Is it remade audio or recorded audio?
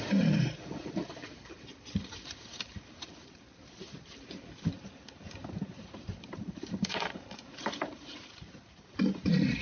remade